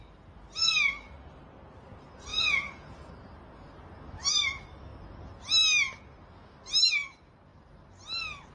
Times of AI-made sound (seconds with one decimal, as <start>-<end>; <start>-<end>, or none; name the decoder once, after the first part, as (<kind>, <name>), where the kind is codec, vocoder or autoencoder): 2.3-3.1 (vocoder, Vocos)